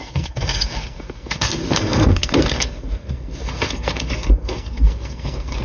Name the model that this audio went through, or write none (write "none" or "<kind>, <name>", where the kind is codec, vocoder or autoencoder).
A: codec, SNAC